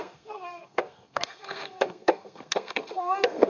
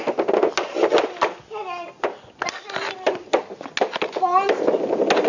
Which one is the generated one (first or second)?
first